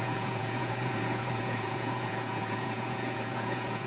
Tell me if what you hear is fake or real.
fake